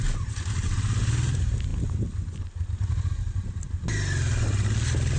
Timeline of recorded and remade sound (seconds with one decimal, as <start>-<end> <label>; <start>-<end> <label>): 0.0-5.2 recorded